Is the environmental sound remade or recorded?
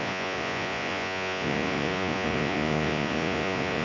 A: remade